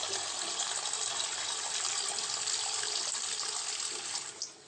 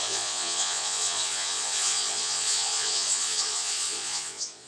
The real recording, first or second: first